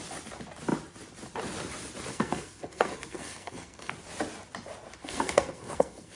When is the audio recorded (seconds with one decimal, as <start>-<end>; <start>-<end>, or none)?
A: 0.0-2.1; 3.9-5.0